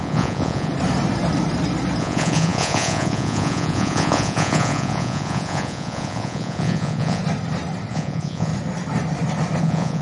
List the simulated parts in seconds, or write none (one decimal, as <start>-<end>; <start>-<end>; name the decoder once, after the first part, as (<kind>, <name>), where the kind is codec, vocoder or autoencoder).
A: 0.0-0.7 (vocoder, Vocos); 2.0-7.2; 7.9-8.5; 9.6-10.0